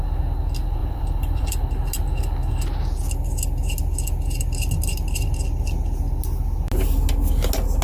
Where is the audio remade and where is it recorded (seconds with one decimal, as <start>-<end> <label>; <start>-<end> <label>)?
0.0-0.8 recorded; 0.8-1.7 remade; 1.7-7.8 recorded